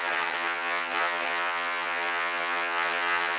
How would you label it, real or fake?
fake